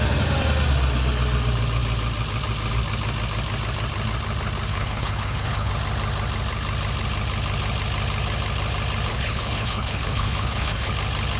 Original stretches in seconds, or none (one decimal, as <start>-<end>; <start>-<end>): 0.0-4.7; 5.7-9.1; 10.9-11.4